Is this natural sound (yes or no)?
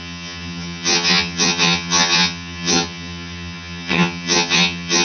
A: no